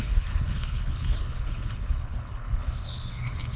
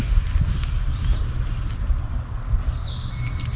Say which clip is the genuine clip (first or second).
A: second